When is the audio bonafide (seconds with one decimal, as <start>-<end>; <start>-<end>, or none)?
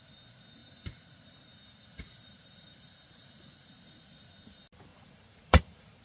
0.0-0.6; 3.7-4.9